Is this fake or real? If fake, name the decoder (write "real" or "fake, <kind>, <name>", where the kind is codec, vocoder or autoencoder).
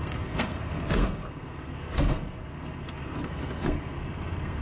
fake, codec, SNAC